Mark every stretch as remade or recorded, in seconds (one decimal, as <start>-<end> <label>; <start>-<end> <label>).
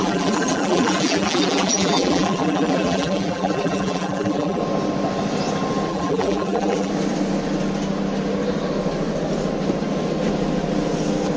0.0-4.6 remade; 4.6-5.9 recorded; 5.9-6.9 remade; 6.9-11.4 recorded